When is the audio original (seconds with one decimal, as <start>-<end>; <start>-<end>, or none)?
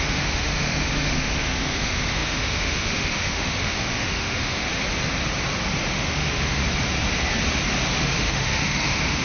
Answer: 4.7-5.9; 6.6-8.0